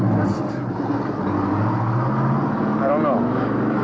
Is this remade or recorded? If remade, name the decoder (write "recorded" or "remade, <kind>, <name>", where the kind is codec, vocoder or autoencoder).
recorded